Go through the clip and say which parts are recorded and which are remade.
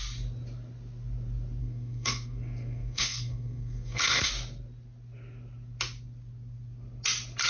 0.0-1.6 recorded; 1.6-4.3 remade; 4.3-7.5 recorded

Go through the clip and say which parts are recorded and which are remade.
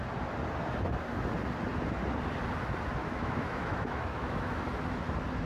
0.0-3.0 recorded; 3.0-4.6 remade; 4.6-5.5 recorded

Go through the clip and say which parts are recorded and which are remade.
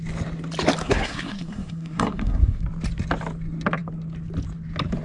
0.0-0.8 recorded; 0.8-2.6 remade; 2.6-5.0 recorded